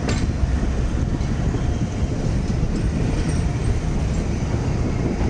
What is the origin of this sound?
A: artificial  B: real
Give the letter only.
B